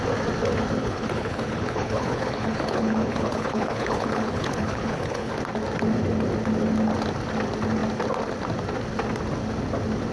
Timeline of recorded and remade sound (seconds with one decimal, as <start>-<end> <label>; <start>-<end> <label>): 0.0-0.8 recorded; 0.8-5.3 remade; 5.3-10.1 recorded